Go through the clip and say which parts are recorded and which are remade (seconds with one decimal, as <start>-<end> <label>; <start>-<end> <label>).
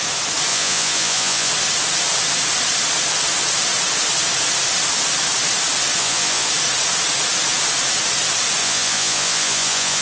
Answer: 0.0-0.5 recorded; 0.5-1.5 remade; 1.5-6.0 recorded; 6.0-6.5 remade; 6.5-8.6 recorded; 8.6-10.0 remade